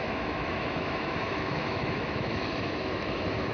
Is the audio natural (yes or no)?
no